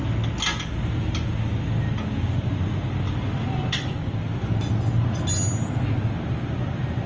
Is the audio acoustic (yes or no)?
yes